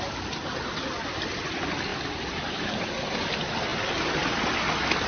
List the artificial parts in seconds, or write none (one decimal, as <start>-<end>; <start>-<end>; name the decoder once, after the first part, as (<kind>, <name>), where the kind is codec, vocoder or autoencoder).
none